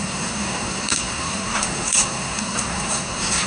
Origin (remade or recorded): remade